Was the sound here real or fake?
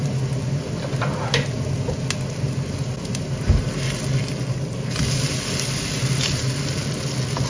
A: real